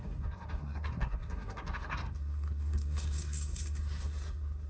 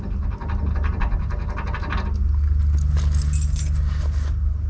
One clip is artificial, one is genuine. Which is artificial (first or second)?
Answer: first